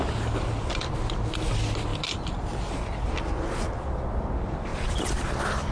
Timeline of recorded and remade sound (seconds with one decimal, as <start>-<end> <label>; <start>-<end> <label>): 0.0-5.7 recorded